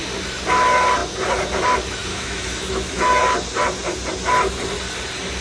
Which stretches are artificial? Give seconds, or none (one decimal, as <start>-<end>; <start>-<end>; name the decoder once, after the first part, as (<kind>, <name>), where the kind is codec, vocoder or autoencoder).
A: 2.1-3.2 (autoencoder, DAC-VAE)